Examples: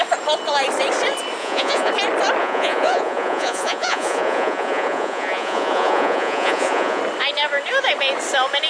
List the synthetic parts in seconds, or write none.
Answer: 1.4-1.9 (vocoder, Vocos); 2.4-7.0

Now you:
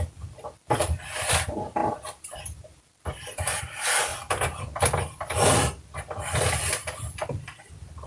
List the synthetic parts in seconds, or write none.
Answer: 0.0-4.1 (vocoder, BigVGAN v2); 6.4-8.1

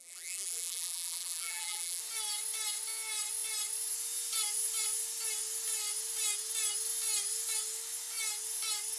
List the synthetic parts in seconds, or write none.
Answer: 0.0-2.0 (vocoder, BigVGAN v2)